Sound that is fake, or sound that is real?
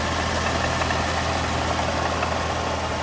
real